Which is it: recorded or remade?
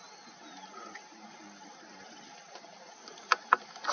recorded